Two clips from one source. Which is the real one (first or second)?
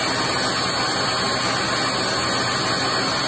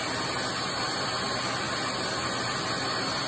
first